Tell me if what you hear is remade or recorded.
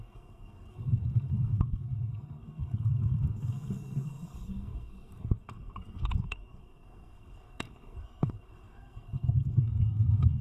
remade